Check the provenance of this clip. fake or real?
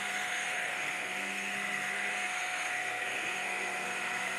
fake